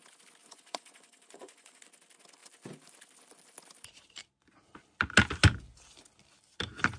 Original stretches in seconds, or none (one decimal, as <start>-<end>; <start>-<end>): 0.0-0.4; 1.8-7.0

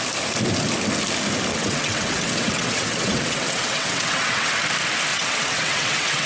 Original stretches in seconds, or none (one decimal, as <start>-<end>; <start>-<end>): 0.0-1.5; 4.5-5.1

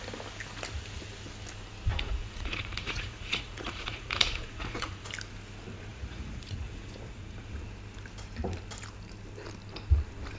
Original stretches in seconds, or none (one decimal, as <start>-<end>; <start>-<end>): 0.0-1.9; 5.1-5.9; 7.5-10.4

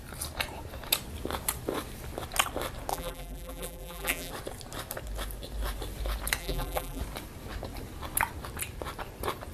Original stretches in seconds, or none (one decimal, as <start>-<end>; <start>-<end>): 0.0-2.9; 4.3-6.4; 7.0-9.5

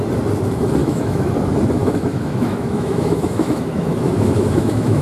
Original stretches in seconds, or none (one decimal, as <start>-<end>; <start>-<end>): 0.0-0.8; 1.3-1.8

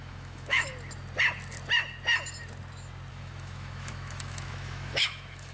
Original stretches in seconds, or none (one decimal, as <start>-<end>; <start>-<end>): 0.7-3.1